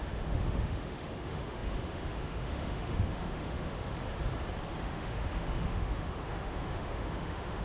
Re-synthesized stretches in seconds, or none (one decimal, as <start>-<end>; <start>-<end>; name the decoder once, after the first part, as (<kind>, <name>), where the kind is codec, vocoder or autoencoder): 0.0-3.9 (autoencoder, DAC-VAE); 4.8-7.6